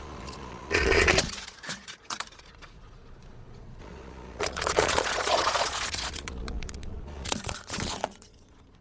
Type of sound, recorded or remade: remade